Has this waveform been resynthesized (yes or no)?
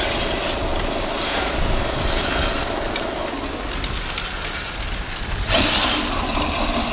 no